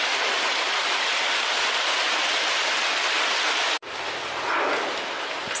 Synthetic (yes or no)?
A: no